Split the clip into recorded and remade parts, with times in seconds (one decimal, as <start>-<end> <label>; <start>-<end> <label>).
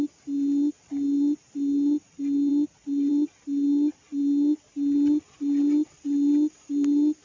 0.0-7.2 recorded